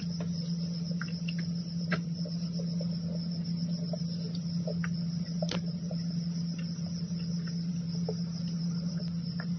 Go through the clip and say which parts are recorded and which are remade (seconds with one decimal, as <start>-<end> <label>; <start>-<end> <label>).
0.0-9.6 recorded